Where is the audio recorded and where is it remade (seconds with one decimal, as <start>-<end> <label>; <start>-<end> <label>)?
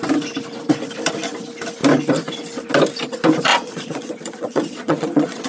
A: 0.0-3.5 recorded; 3.5-5.5 remade